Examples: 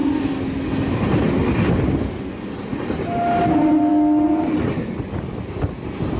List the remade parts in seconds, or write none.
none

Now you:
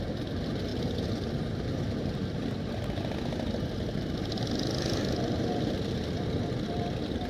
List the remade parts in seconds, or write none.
none

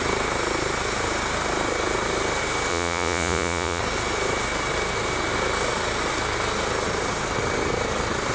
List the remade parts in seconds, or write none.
2.7-3.8 (vocoder, Vocos)

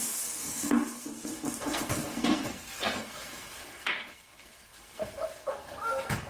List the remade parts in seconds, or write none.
0.0-6.3 (codec, SNAC)